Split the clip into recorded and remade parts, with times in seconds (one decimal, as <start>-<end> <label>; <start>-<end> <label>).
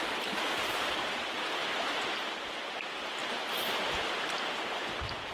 0.0-5.3 recorded